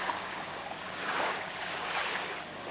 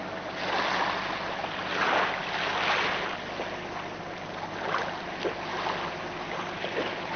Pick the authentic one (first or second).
second